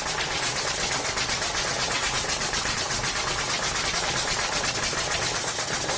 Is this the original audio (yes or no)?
yes